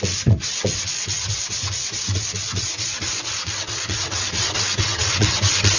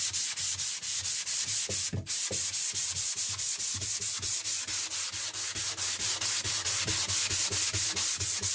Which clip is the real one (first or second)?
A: second